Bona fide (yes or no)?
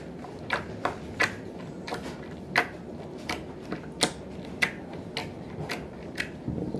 yes